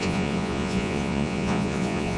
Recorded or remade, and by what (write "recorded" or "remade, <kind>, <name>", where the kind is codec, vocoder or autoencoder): remade, vocoder, Vocos